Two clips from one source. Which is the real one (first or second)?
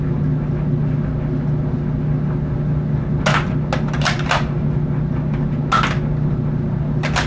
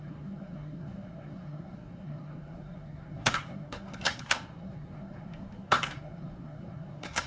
first